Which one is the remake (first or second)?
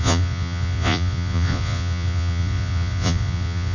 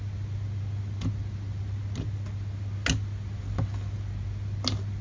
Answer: first